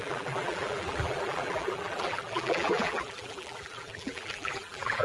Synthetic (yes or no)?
yes